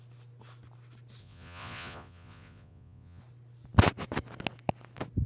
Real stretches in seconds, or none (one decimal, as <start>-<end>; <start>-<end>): 0.0-1.2; 3.2-5.3